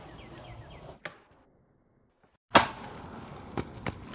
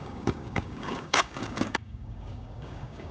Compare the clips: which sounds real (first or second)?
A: first